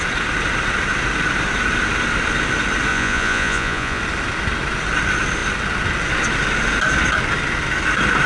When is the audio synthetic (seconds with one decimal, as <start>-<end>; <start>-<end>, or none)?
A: 2.9-4.0